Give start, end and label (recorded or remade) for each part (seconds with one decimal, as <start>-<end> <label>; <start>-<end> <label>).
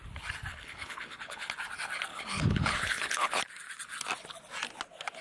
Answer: 0.0-0.5 recorded; 0.5-1.5 remade; 1.5-2.1 recorded; 2.1-3.4 remade; 3.4-5.2 recorded